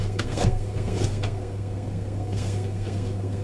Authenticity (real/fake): fake